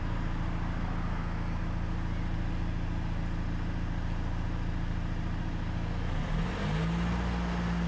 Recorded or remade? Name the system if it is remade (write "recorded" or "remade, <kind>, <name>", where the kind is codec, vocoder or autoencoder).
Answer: recorded